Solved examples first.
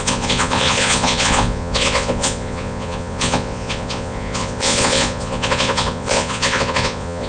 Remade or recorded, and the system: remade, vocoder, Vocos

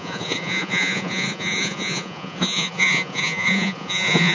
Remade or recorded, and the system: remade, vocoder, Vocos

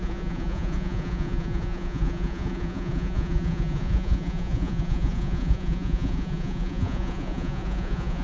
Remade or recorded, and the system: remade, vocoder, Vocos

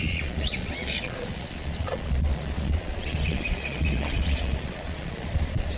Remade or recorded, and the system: remade, vocoder, Vocos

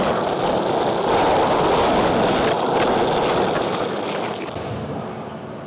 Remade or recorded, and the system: recorded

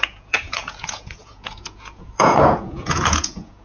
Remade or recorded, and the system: remade, vocoder, Vocos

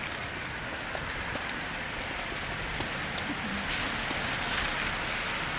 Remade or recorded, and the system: recorded